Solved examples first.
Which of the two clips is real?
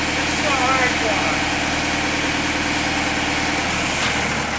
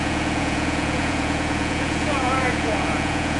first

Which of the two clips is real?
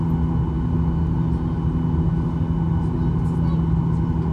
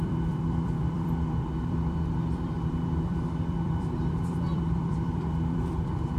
first